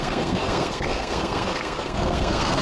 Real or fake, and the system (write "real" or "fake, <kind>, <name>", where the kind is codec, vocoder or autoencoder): fake, codec, SNAC